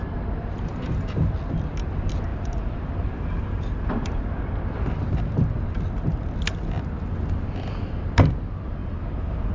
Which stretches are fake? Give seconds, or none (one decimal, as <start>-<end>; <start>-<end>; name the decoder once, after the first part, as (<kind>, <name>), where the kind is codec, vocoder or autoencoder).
0.7-1.3 (vocoder, BigVGAN v2); 2.3-4.2; 8.8-9.5